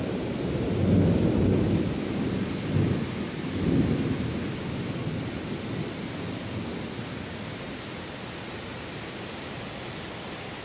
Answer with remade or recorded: recorded